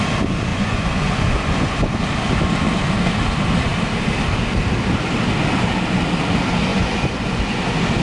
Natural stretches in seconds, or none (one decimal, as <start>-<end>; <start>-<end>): 0.0-0.5; 2.0-6.7; 7.6-8.0